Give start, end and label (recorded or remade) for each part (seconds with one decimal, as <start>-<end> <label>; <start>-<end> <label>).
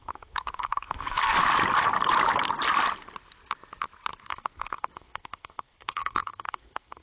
0.0-1.4 remade; 1.4-4.3 recorded; 4.3-7.0 remade